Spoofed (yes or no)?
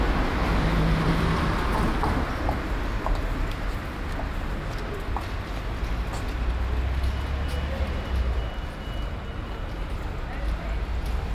no